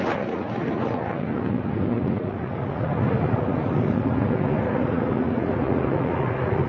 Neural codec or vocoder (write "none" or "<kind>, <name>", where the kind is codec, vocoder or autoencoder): vocoder, Vocos